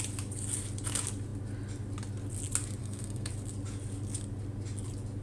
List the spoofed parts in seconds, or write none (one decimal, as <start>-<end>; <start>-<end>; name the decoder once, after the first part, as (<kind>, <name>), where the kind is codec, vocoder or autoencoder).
2.8-3.3 (codec, SNAC)